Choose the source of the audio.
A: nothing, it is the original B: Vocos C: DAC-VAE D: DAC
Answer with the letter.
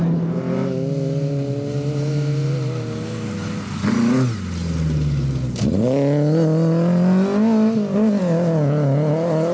A